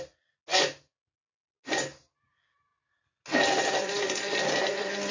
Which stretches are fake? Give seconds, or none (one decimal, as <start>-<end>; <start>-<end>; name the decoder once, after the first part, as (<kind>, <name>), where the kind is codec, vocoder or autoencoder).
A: none